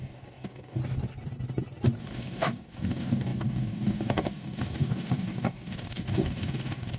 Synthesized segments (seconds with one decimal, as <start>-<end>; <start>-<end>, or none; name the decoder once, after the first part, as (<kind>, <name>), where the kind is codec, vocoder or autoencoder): 0.0-0.8 (codec, DAC); 2.0-7.0